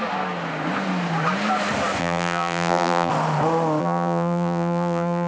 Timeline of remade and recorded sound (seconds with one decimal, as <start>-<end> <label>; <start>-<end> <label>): 0.0-2.0 recorded; 2.0-3.1 remade; 3.1-3.8 recorded; 3.8-5.3 remade

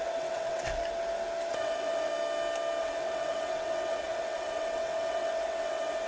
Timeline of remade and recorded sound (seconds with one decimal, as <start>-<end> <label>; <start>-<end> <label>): 0.0-0.8 remade; 0.8-1.5 recorded; 1.5-2.1 remade; 2.1-2.8 recorded; 2.8-6.1 remade